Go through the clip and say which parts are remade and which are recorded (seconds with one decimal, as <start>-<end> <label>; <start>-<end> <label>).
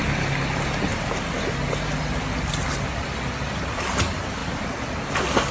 0.0-5.5 recorded